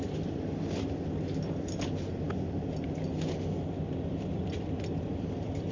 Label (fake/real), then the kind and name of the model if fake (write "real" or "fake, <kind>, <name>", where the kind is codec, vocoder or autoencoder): real